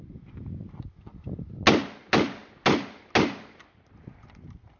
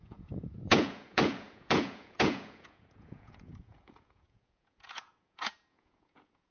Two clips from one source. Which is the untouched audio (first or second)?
first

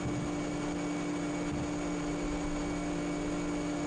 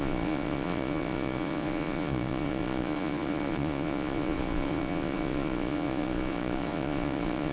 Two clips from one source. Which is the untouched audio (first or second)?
first